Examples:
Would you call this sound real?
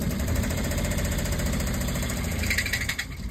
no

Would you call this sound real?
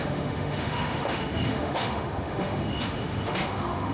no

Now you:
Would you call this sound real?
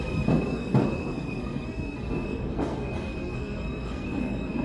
no